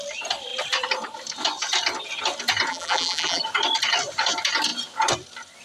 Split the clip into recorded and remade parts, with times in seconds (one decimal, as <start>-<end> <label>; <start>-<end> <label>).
0.0-2.7 recorded; 2.7-3.4 remade; 3.4-5.6 recorded

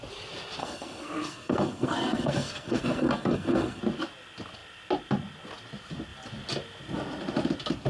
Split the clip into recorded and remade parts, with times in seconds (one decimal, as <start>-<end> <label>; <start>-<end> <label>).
0.0-0.6 recorded; 0.6-3.8 remade; 3.8-7.9 recorded

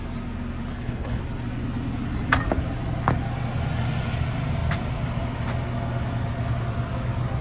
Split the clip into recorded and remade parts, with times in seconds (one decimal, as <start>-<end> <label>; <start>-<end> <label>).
0.0-0.7 recorded; 0.7-1.2 remade; 1.2-7.4 recorded

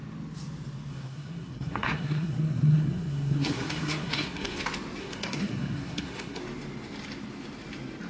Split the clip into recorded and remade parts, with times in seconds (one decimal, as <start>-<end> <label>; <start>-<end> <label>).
0.0-0.9 recorded; 0.9-4.6 remade; 4.6-5.0 recorded; 5.0-6.4 remade; 6.4-8.1 recorded